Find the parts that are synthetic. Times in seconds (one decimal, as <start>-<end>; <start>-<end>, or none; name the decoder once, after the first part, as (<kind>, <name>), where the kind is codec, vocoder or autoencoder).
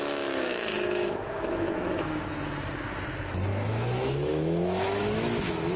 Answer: 0.5-2.2 (autoencoder, DAC-VAE); 3.5-5.8